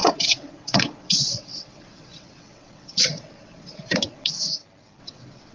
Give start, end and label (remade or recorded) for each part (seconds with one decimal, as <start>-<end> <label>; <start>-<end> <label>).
0.0-4.5 remade; 4.5-5.0 recorded; 5.0-5.5 remade